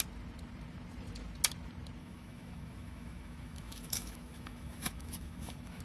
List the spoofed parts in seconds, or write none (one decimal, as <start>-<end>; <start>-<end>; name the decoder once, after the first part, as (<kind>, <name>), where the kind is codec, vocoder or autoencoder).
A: 2.0-5.8 (autoencoder, DAC-VAE)